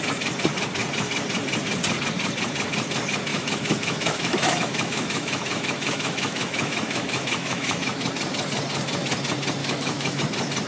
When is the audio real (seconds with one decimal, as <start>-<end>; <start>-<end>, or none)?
0.0-3.3; 8.1-9.6; 10.2-10.7